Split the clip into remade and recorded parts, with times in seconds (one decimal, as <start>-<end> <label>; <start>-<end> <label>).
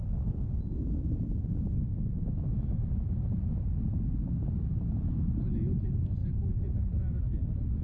0.0-1.9 recorded; 1.9-3.2 remade; 3.2-7.8 recorded